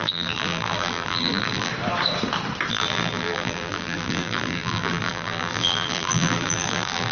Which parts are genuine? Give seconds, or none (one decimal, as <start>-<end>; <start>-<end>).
1.7-2.7